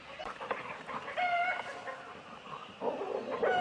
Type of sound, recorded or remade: recorded